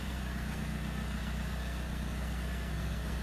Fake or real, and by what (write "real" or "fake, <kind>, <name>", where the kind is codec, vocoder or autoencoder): fake, codec, SNAC